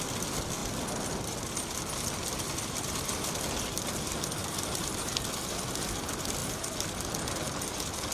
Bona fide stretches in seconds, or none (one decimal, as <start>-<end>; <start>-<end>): 0.0-8.1